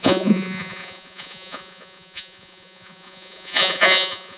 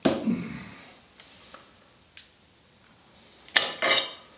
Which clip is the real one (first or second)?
second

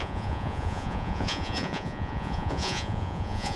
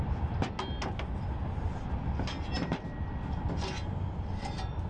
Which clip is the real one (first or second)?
second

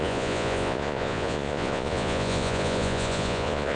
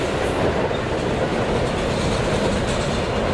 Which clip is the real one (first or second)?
second